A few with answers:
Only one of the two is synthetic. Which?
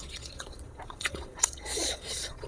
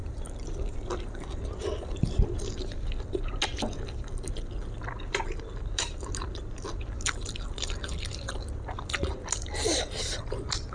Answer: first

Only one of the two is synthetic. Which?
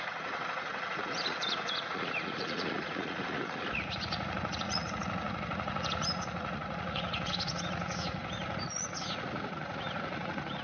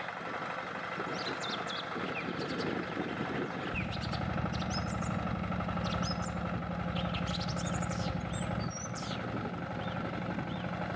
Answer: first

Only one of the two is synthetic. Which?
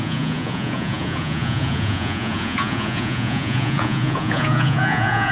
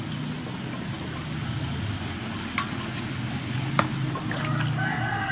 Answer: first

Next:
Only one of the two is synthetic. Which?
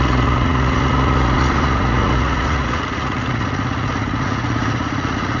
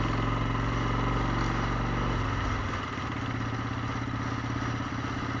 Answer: first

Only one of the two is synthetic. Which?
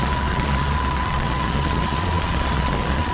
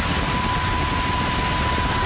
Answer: first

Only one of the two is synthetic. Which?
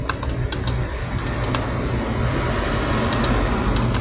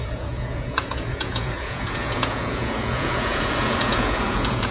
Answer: second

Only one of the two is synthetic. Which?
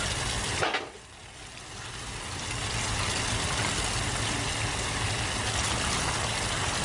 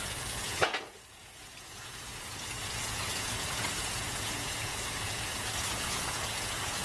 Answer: second